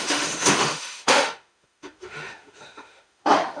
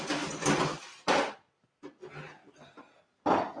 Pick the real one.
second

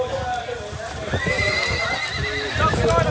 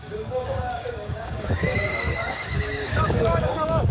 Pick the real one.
first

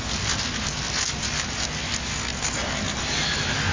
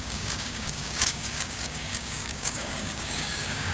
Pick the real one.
first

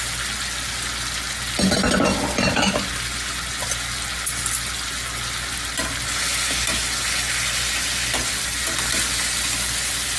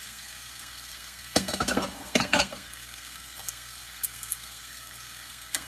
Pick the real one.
first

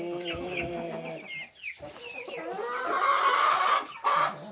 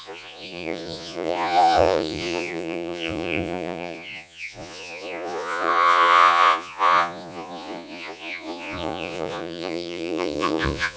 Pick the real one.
first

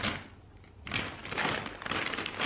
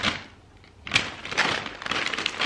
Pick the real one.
first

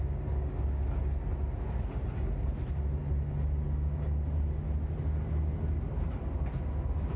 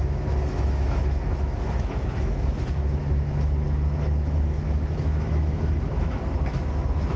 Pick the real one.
first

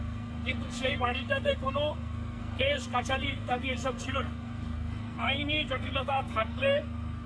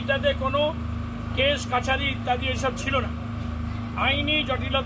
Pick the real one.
second